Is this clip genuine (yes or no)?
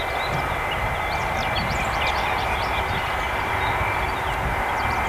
yes